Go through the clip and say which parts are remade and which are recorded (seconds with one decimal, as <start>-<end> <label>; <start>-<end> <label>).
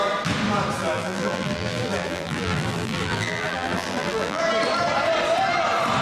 0.0-0.8 recorded; 0.8-4.4 remade; 4.4-6.0 recorded